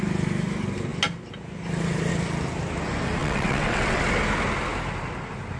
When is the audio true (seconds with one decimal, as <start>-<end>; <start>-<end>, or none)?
0.0-3.2; 4.0-5.6